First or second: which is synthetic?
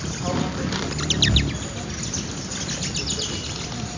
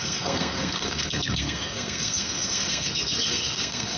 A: second